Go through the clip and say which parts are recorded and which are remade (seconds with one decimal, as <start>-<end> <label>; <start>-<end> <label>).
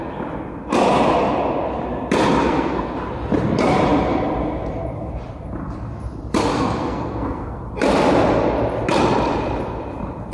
0.0-2.4 recorded; 2.4-2.9 remade; 2.9-6.5 recorded; 6.5-7.6 remade; 7.6-10.3 recorded